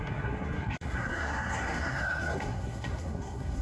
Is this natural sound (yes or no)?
no